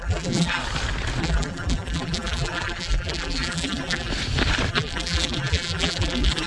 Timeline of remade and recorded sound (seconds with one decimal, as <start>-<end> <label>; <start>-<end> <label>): 0.0-0.6 remade; 0.6-1.2 recorded; 1.2-4.1 remade; 4.1-4.7 recorded; 4.7-6.5 remade